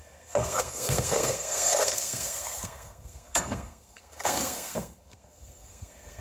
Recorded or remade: remade